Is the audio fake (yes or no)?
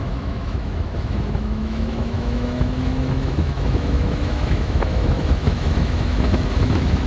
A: yes